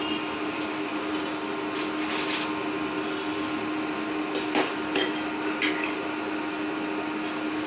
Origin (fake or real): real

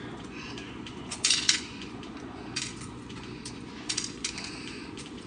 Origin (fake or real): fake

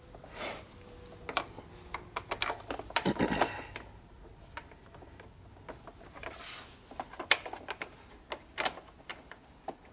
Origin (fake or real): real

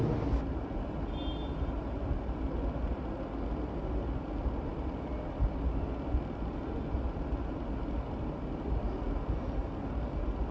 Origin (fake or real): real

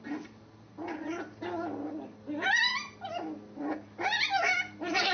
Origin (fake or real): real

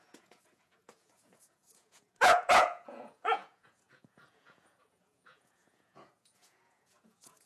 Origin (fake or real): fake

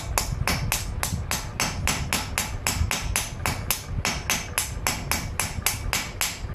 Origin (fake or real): real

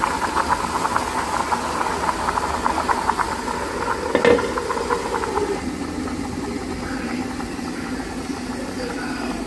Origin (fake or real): real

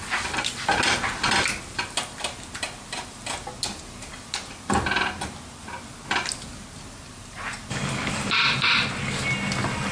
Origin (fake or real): real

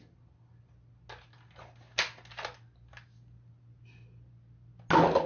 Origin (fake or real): real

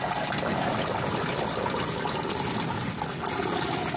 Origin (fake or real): real